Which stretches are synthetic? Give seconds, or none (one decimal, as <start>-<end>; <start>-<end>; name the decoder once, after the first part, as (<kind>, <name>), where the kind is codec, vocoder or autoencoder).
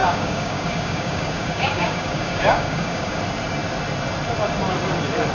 0.0-3.2 (codec, DAC)